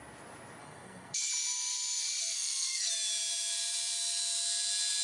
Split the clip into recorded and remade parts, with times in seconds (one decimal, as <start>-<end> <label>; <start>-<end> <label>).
0.0-0.6 recorded; 0.6-1.3 remade; 1.3-2.2 recorded; 2.2-2.9 remade; 2.9-5.0 recorded